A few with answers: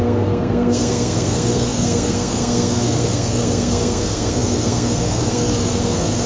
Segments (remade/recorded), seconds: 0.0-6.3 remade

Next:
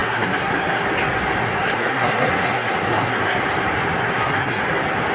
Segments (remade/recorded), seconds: 0.0-0.8 remade; 0.8-1.4 recorded; 1.4-3.4 remade; 3.4-4.0 recorded; 4.0-4.6 remade; 4.6-5.1 recorded

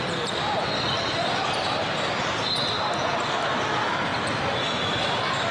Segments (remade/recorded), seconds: 0.0-5.5 recorded

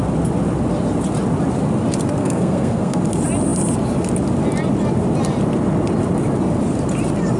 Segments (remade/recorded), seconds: 0.0-2.2 recorded; 2.2-3.0 remade; 3.0-7.4 recorded

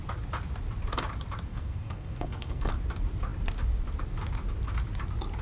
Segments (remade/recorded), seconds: 0.0-1.5 recorded; 1.5-2.7 remade; 2.7-5.4 recorded

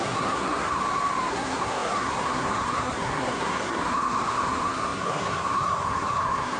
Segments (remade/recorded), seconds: 0.0-0.8 remade; 0.8-1.3 recorded; 1.3-6.6 remade